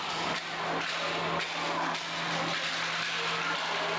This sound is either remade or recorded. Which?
recorded